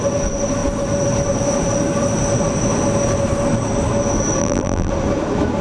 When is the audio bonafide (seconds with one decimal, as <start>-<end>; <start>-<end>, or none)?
0.0-4.4; 4.9-5.6